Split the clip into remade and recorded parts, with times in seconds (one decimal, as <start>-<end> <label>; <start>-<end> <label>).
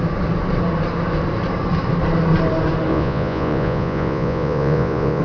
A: 0.0-2.9 recorded; 2.9-5.2 remade